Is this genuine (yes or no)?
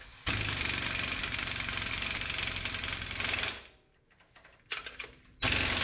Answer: yes